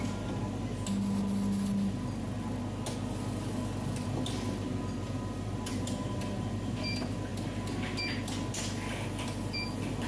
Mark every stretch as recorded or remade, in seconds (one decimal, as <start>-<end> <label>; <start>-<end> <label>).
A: 0.0-5.7 recorded; 5.7-6.2 remade; 6.2-10.1 recorded